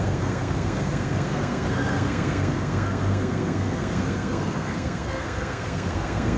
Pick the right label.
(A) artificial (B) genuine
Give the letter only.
A